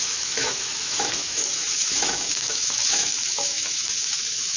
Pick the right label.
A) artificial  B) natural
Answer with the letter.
A